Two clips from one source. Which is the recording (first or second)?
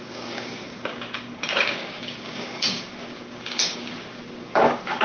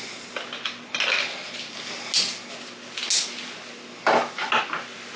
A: second